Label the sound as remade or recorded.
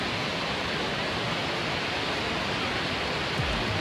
recorded